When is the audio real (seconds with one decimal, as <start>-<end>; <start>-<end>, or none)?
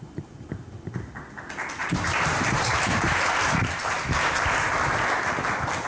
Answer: 0.0-1.8; 4.7-5.9